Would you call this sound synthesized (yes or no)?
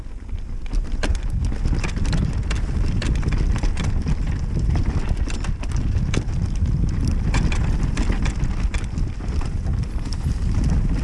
no